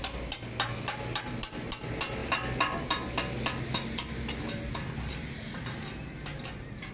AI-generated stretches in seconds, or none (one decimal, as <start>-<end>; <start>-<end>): none